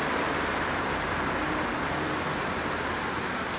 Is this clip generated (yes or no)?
no